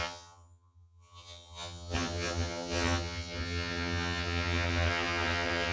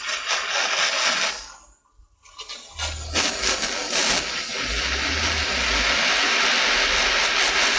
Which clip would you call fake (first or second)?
first